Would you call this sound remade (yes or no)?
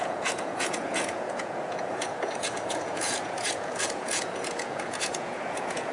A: yes